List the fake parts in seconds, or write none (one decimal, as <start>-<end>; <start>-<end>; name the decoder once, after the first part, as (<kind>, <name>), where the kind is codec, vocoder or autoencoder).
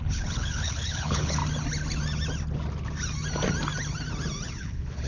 0.0-1.4 (codec, HILCodec); 4.5-5.1